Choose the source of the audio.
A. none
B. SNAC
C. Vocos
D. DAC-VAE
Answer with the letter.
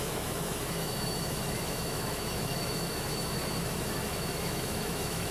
D